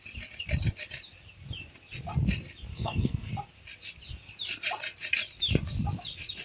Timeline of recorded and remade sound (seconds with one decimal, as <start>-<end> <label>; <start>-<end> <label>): 0.0-2.7 recorded; 2.7-3.3 remade; 3.3-6.4 recorded